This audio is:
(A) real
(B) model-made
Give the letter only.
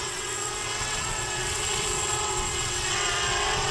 B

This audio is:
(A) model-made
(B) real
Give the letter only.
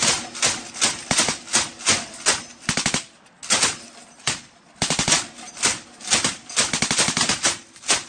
B